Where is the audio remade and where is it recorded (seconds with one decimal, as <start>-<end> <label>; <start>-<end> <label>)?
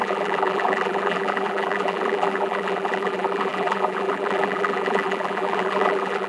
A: 0.0-6.3 remade